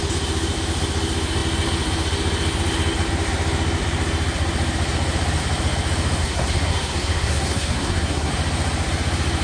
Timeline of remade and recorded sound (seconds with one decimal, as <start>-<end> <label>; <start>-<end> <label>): 0.0-6.2 recorded; 6.2-8.3 remade; 8.3-9.4 recorded